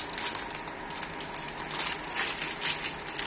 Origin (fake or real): real